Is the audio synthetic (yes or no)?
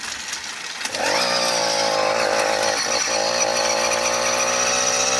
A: no